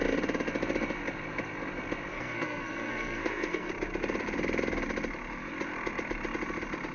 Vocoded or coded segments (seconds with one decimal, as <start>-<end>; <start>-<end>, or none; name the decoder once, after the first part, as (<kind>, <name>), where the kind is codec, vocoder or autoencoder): 2.1-3.7 (codec, SNAC)